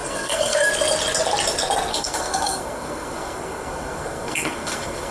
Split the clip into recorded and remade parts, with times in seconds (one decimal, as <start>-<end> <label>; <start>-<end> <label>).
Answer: 0.0-0.7 remade; 0.7-1.9 recorded; 1.9-5.1 remade